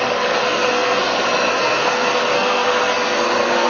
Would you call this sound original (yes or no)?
no